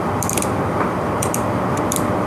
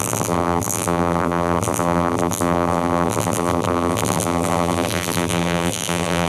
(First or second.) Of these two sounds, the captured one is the first